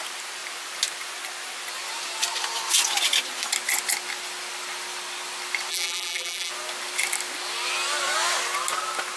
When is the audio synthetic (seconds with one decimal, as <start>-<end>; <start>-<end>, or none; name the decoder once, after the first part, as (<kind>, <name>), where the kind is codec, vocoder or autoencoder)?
5.7-6.5 (vocoder, BigVGAN v2)